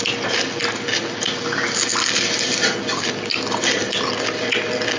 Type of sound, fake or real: real